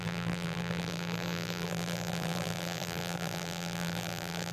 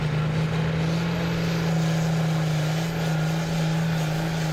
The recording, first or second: second